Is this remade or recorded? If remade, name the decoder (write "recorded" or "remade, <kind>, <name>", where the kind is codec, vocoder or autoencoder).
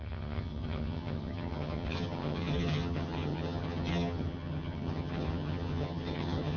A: remade, vocoder, HiFi-GAN